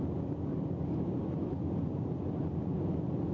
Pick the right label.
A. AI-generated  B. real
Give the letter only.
B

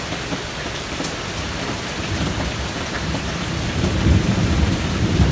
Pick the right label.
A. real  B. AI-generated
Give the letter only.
B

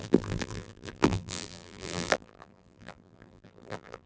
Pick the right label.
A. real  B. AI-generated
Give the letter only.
B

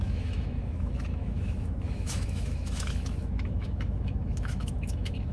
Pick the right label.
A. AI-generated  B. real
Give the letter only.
A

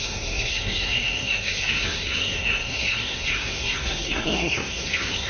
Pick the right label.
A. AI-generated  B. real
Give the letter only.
A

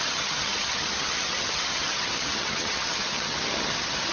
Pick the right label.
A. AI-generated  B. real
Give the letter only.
A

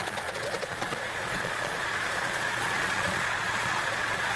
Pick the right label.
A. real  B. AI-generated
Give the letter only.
B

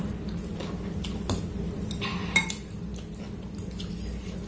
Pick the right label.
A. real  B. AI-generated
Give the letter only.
A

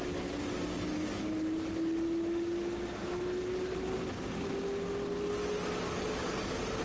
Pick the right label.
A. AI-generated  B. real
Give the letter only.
B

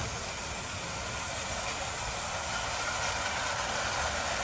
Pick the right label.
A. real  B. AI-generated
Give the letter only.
A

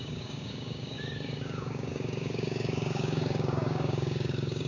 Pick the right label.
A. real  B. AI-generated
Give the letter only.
B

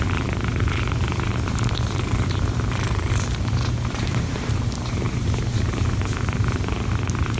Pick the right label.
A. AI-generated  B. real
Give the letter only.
A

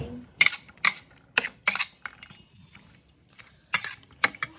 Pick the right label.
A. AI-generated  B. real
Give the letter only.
B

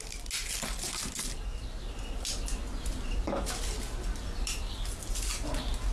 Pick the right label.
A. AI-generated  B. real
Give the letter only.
B